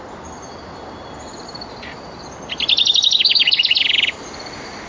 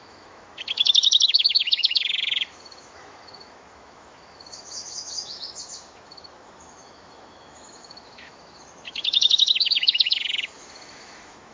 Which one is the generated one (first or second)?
second